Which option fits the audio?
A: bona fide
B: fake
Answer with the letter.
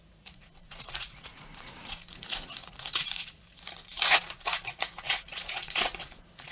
B